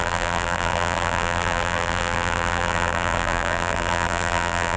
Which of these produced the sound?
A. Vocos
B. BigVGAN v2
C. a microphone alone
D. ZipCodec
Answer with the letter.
B